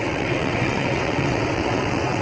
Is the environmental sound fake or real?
fake